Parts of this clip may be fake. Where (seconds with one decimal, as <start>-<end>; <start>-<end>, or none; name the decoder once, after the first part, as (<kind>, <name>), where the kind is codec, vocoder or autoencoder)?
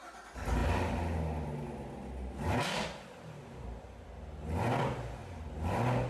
none